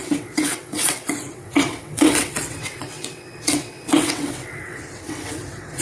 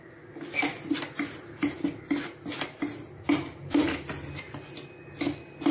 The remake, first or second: first